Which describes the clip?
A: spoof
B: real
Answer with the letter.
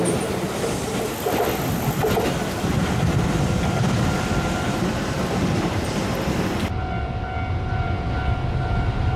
B